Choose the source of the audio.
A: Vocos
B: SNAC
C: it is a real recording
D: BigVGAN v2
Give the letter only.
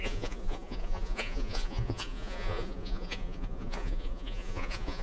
A